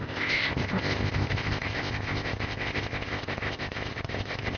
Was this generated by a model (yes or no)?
yes